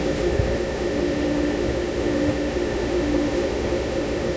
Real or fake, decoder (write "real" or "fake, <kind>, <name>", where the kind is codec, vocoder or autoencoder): fake, autoencoder, DAC-VAE